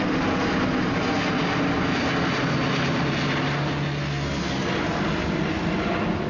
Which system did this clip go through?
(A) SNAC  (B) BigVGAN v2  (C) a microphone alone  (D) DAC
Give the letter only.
C